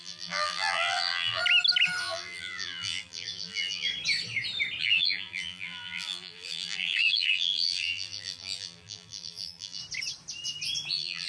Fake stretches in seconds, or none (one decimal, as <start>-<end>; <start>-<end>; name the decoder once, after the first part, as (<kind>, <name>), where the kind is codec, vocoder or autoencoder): 0.0-1.4 (vocoder, BigVGAN v2); 2.0-3.9; 4.8-9.8; 10.9-11.3